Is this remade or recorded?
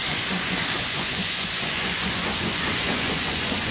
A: remade